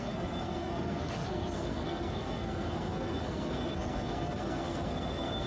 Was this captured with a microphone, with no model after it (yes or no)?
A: no